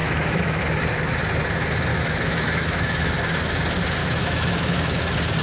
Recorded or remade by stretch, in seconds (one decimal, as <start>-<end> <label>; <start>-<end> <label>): 0.0-0.6 remade; 0.6-1.9 recorded; 1.9-3.1 remade; 3.1-4.0 recorded; 4.0-5.0 remade; 5.0-5.4 recorded